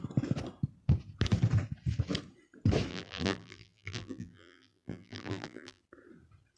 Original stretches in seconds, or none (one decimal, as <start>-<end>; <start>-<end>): 0.0-2.9; 5.8-6.6